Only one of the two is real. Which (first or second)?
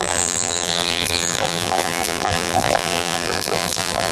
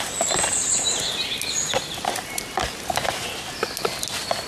second